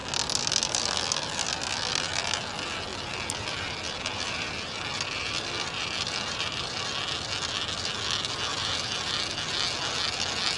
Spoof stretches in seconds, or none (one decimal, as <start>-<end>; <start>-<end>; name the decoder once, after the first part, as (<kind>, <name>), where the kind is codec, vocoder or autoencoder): 2.9-6.8 (vocoder, BigVGAN v2); 8.5-9.1